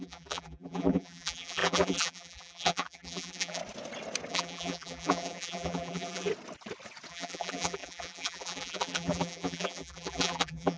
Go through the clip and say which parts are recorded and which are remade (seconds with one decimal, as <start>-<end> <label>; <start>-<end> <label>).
0.0-3.6 remade; 3.6-4.3 recorded; 4.3-6.3 remade; 6.3-7.1 recorded; 7.1-10.8 remade